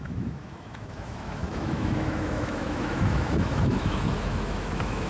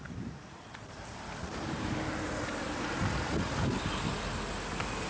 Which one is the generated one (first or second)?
first